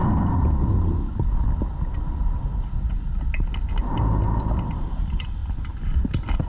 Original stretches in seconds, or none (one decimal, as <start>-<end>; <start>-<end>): 0.0-5.4